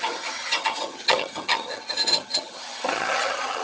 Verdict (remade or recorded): remade